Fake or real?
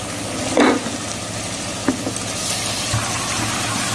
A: real